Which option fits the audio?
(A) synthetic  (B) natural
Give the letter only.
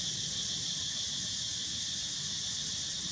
B